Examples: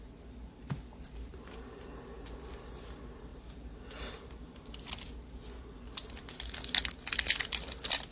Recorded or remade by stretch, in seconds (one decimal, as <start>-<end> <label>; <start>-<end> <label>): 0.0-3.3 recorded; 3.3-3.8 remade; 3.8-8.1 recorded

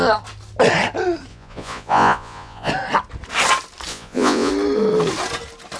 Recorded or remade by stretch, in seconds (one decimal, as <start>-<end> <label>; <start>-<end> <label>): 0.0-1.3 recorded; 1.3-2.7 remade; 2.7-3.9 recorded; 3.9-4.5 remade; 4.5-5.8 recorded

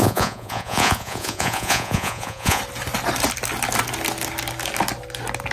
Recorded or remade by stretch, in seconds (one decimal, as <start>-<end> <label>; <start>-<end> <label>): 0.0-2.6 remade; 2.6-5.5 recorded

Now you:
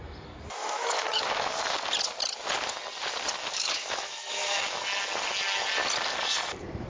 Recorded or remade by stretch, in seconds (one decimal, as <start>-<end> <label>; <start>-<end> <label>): 0.0-0.6 recorded; 0.6-1.5 remade; 1.5-3.4 recorded; 3.4-4.8 remade; 4.8-6.9 recorded

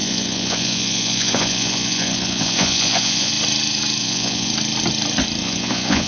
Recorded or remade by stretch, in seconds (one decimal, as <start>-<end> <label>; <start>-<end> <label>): 0.0-3.3 remade; 3.3-4.0 recorded; 4.0-4.5 remade; 4.5-5.4 recorded; 5.4-6.1 remade

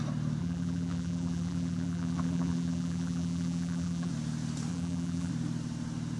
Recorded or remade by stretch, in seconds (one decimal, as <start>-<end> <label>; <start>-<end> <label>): 0.0-0.4 recorded; 0.4-4.1 remade; 4.1-4.7 recorded; 4.7-5.3 remade; 5.3-6.2 recorded

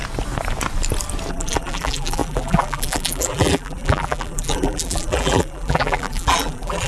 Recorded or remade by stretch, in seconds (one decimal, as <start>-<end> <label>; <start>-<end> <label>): 0.0-1.3 recorded; 1.3-6.9 remade

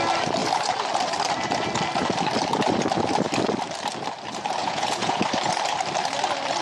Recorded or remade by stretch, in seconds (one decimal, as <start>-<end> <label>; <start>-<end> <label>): 0.0-4.6 recorded; 4.6-5.2 remade; 5.2-6.6 recorded